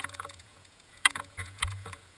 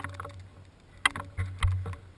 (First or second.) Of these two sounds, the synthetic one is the first